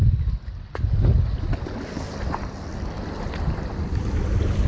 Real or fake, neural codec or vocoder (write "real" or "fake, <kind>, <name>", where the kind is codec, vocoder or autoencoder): real